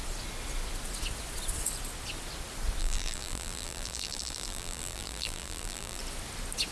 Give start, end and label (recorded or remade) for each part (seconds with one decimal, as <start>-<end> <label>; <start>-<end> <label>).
0.0-2.8 recorded; 2.8-6.0 remade; 6.0-6.7 recorded